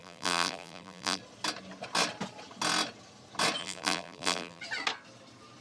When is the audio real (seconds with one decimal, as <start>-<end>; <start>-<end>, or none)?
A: 1.2-3.6; 4.6-5.6